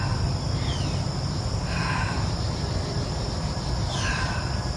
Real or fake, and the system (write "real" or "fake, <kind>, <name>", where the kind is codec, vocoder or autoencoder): real